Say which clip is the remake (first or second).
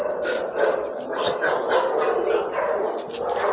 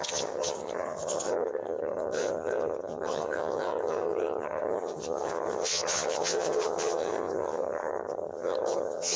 second